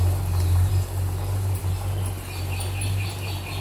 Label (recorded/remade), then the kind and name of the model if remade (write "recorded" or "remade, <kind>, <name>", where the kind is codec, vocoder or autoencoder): recorded